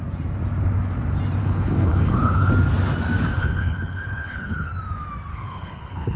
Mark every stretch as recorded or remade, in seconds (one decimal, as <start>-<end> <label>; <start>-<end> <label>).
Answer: 0.0-1.4 recorded; 1.4-2.5 remade; 2.5-3.3 recorded; 3.3-4.7 remade; 4.7-5.3 recorded; 5.3-6.2 remade